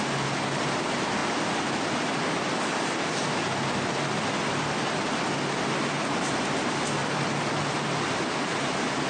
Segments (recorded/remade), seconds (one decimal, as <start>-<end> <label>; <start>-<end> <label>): 0.0-9.1 recorded

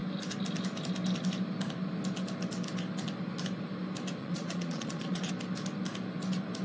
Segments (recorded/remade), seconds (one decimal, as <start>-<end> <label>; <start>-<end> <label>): 0.0-4.2 recorded; 4.2-5.3 remade; 5.3-6.6 recorded

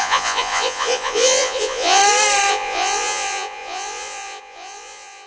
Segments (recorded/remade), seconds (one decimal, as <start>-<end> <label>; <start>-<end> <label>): 0.0-2.0 remade; 2.0-2.5 recorded; 2.5-5.3 remade

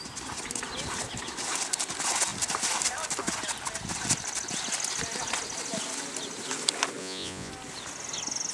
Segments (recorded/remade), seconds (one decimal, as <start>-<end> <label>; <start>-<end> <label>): 0.0-7.0 recorded; 7.0-7.5 remade; 7.5-8.5 recorded

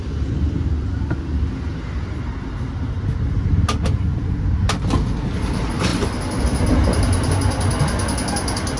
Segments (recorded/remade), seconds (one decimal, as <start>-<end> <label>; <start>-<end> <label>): 0.0-8.8 recorded

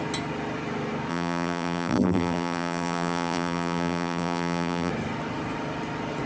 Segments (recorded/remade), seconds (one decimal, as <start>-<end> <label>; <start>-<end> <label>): 0.0-1.1 recorded; 1.1-4.9 remade; 4.9-6.3 recorded

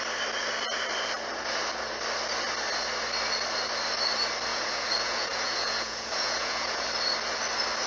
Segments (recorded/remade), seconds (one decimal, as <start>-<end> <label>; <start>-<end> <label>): 0.0-4.5 recorded; 4.5-6.8 remade; 6.8-7.9 recorded